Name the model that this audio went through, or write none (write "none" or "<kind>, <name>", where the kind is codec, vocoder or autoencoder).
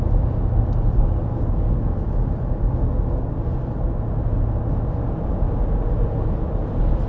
none